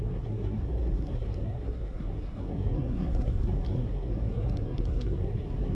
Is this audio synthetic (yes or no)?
yes